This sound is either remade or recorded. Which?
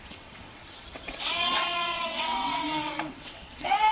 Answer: remade